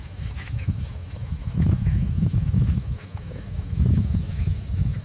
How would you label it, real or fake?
fake